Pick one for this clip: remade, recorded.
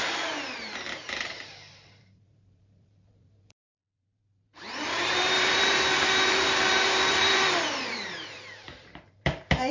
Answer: remade